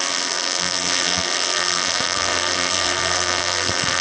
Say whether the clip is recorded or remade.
remade